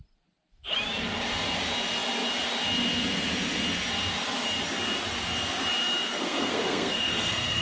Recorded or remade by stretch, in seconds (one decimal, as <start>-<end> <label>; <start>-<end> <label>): 0.0-6.1 recorded; 6.1-7.6 remade